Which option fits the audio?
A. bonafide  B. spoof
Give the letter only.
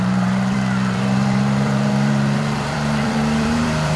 B